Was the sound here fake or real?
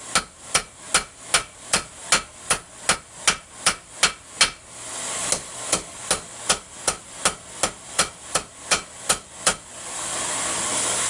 real